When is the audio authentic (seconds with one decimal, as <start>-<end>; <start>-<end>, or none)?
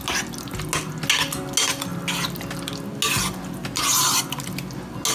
0.0-5.1